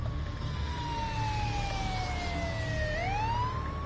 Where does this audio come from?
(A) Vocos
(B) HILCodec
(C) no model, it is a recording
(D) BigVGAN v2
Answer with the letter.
C